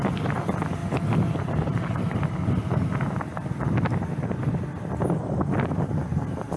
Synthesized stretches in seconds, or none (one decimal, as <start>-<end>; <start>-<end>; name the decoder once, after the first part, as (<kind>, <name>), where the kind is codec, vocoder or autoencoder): none